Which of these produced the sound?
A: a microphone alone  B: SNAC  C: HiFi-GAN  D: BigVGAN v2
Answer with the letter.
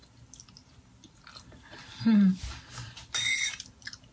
A